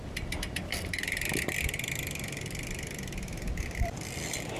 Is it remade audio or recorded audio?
remade